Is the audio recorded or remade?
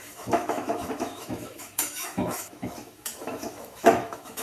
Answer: remade